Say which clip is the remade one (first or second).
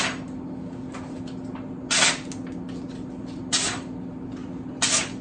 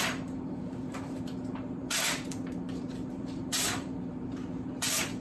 second